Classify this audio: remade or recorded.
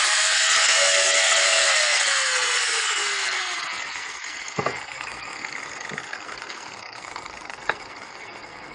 remade